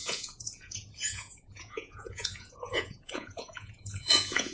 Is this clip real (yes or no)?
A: no